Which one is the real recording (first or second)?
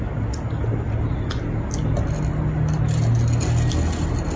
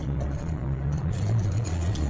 first